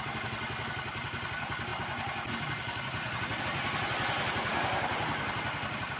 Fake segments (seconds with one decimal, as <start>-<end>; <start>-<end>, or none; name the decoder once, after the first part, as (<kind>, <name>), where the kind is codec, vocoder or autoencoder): none